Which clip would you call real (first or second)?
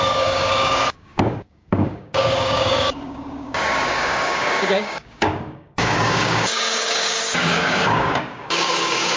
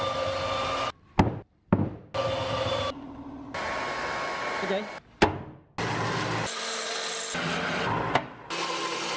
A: second